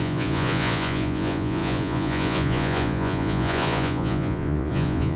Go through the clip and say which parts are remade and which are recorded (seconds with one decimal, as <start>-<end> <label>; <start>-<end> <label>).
0.0-5.2 remade